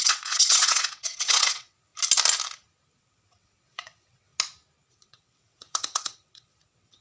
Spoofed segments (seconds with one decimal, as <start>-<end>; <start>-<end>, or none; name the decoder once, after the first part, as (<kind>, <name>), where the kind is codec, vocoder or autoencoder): 0.0-1.9 (vocoder, WaveNeXt); 3.0-4.3; 4.9-7.0